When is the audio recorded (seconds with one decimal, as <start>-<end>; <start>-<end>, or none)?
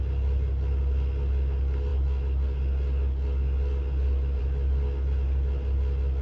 0.0-6.2